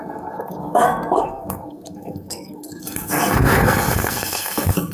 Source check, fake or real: fake